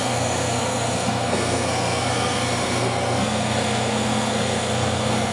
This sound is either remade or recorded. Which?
remade